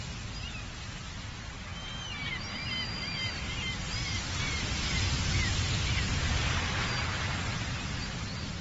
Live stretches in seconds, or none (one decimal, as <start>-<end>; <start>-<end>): 0.0-8.6